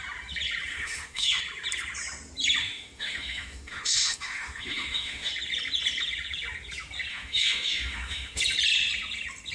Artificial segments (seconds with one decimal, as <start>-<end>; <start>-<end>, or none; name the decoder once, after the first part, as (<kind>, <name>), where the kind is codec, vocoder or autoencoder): 0.7-1.4 (autoencoder, DAC-VAE); 2.6-5.3; 7.1-8.4